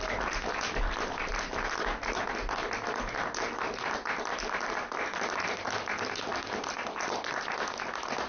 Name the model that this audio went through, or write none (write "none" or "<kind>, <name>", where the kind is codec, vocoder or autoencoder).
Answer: none